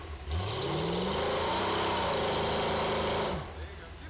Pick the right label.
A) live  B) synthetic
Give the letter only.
A